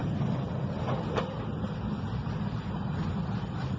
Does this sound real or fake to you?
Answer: real